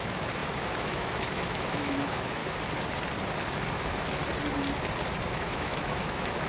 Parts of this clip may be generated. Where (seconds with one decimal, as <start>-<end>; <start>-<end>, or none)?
0.0-2.4; 3.7-4.2; 5.3-6.5